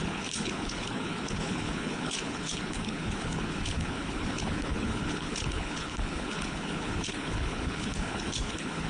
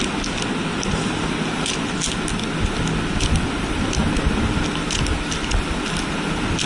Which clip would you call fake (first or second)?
first